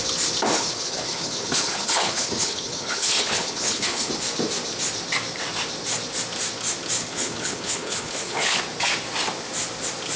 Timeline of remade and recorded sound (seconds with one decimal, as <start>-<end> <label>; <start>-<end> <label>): 0.0-0.5 recorded; 0.5-4.1 remade; 4.1-7.0 recorded; 7.0-8.6 remade; 8.6-10.2 recorded